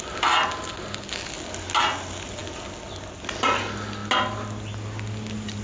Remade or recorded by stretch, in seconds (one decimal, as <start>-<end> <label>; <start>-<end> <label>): 0.0-5.6 recorded